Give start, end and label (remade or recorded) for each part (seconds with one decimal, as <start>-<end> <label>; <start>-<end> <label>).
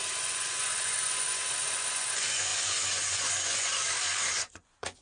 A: 0.0-3.7 remade; 3.7-4.3 recorded; 4.3-5.0 remade